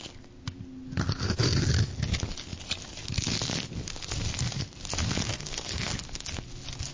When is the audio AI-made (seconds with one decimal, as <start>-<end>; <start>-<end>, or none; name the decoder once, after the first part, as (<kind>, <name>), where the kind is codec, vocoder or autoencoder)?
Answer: 5.3-5.9 (codec, SNAC)